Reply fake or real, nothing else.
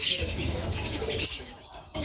fake